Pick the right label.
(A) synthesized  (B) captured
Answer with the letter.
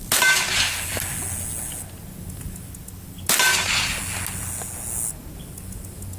B